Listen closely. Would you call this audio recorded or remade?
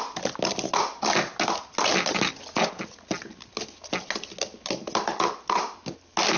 recorded